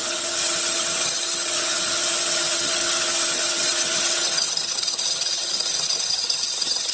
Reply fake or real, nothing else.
fake